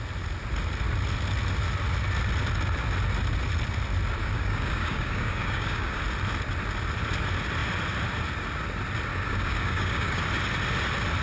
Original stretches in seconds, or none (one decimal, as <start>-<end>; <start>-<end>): 0.0-4.2; 6.0-9.1; 10.2-11.2